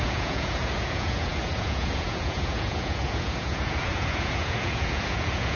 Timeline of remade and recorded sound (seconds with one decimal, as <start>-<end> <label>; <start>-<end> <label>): 0.0-5.6 remade

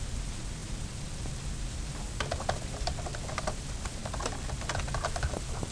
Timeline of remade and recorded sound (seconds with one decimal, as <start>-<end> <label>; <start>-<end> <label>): 0.0-5.7 remade

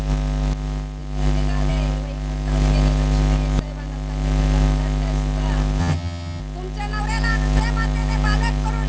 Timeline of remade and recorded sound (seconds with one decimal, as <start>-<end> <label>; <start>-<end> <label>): 0.0-5.8 recorded; 5.8-6.4 remade; 6.4-8.9 recorded

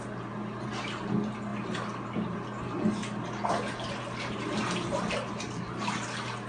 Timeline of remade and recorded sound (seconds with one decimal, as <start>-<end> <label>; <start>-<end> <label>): 0.0-6.5 recorded

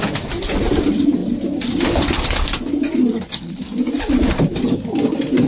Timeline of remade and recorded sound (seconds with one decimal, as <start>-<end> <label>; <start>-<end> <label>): 0.0-5.5 recorded

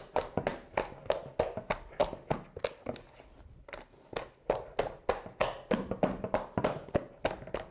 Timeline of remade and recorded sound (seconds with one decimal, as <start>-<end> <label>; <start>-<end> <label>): 0.0-7.7 recorded

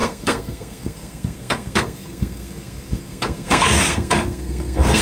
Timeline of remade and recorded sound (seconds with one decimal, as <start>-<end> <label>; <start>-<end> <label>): 0.0-5.0 remade